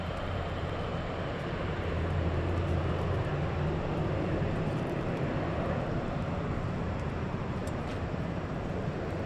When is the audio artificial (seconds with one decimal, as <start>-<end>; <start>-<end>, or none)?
0.0-0.9; 1.6-3.3; 3.9-9.3